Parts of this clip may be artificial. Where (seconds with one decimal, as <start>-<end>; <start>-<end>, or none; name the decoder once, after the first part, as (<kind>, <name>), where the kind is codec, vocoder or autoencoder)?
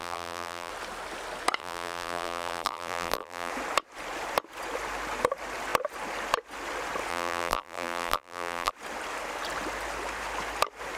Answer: 0.0-0.7 (vocoder, BigVGAN v2); 1.6-3.5; 7.1-8.7